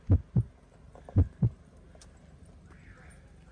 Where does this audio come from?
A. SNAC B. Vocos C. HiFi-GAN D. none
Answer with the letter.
D